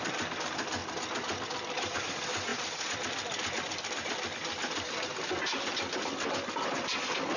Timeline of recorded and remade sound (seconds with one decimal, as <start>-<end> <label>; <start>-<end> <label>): 0.0-2.5 recorded; 2.5-5.6 remade; 5.6-7.4 recorded